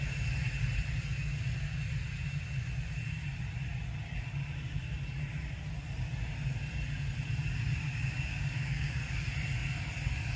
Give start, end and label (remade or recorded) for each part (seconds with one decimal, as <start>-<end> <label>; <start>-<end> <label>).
0.0-7.8 recorded; 7.8-9.0 remade; 9.0-10.4 recorded